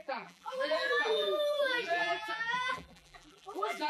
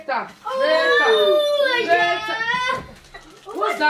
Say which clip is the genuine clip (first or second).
second